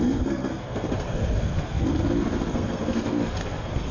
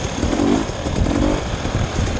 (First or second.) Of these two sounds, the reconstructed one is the first